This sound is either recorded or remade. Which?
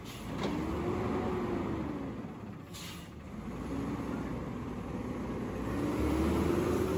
recorded